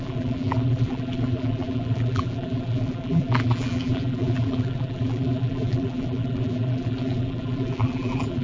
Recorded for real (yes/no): no